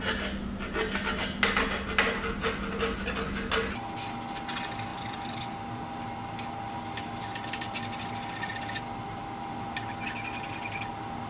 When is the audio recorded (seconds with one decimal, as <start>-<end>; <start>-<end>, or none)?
0.0-4.9; 5.9-11.3